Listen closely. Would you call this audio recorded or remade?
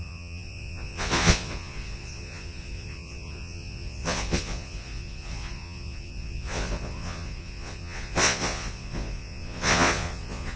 remade